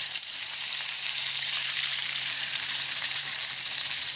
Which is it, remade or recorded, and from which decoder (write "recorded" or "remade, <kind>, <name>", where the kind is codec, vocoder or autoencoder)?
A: remade, vocoder, BigVGAN v2